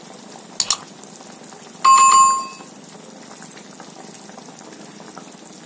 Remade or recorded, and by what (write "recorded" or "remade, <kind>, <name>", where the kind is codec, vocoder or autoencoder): recorded